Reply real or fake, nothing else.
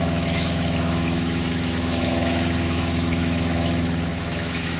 fake